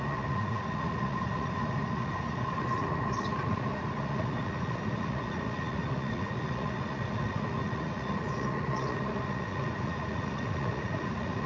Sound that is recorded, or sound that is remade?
remade